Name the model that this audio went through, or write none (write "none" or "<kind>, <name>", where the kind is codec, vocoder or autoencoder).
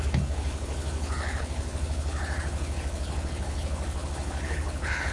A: codec, HILCodec